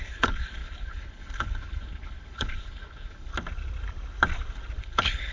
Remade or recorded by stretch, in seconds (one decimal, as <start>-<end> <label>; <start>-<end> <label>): 0.0-3.3 remade; 3.3-4.8 recorded; 4.8-5.3 remade